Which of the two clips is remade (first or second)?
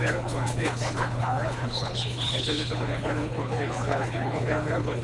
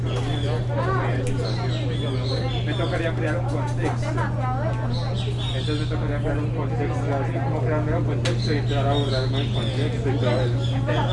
first